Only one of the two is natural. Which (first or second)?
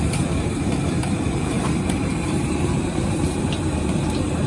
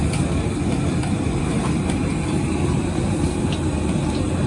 second